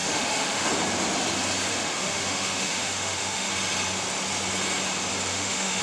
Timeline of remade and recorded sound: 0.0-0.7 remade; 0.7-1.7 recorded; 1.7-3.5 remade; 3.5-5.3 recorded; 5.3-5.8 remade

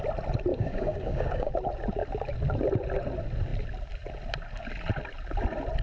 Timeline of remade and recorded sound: 0.0-0.5 recorded; 0.5-1.5 remade; 1.5-5.8 recorded

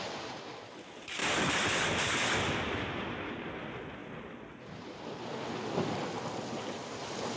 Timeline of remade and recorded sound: 0.0-4.0 recorded; 4.0-6.3 remade; 6.3-7.4 recorded

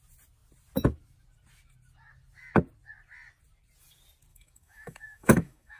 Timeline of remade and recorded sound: 0.0-4.3 recorded; 4.3-5.8 remade

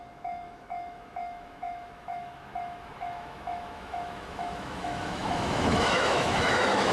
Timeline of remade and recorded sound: 0.0-6.9 remade

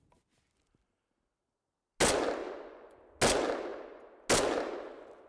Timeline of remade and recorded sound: 0.0-2.4 recorded; 2.4-3.0 remade; 3.0-5.3 recorded

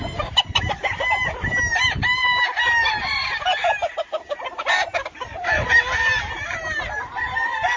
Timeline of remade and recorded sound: 0.0-7.8 recorded